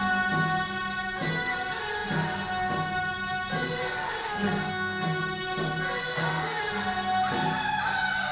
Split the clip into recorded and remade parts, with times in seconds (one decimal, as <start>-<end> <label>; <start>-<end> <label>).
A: 0.0-4.2 recorded; 4.2-5.2 remade; 5.2-6.0 recorded; 6.0-6.6 remade; 6.6-8.3 recorded